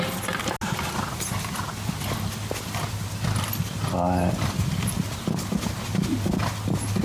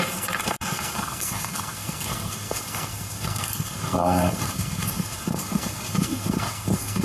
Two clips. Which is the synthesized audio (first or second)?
second